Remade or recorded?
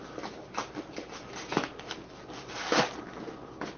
recorded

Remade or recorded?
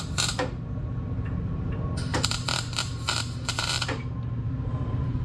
remade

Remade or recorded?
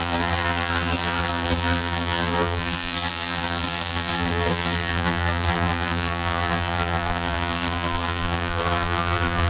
remade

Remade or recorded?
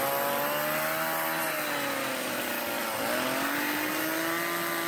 recorded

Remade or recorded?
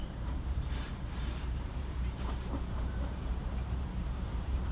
remade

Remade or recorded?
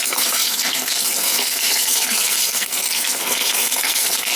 remade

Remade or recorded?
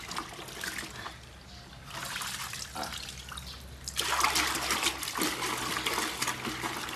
recorded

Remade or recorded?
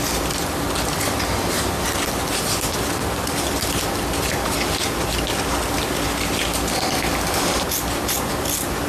remade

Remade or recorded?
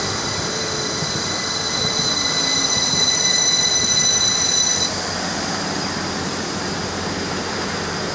remade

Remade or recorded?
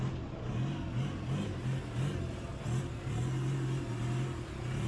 recorded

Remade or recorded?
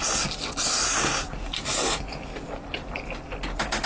recorded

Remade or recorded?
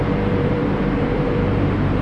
remade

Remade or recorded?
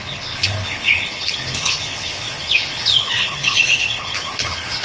remade